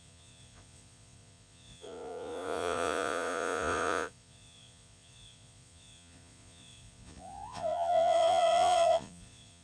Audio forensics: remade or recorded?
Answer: remade